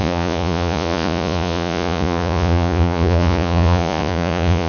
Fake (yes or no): yes